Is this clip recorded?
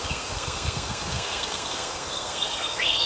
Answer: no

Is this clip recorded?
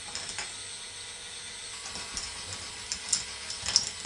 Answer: yes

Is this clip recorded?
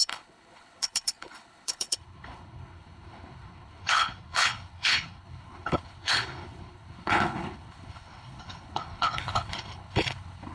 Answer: no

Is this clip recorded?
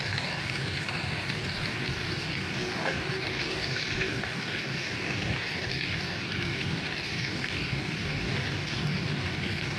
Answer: no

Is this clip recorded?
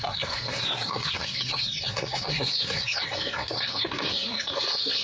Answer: no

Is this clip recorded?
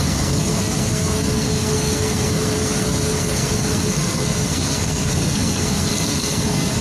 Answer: no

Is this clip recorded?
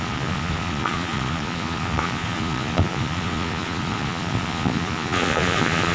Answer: no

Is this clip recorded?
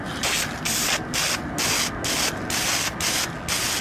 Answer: yes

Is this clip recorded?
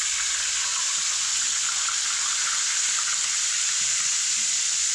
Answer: yes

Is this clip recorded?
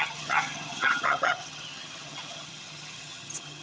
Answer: no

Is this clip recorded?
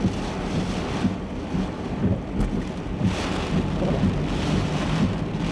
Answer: yes